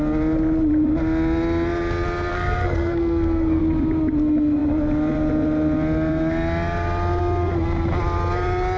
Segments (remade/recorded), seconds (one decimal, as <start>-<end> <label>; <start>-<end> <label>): 0.0-2.3 recorded; 2.3-3.6 remade; 3.6-8.8 recorded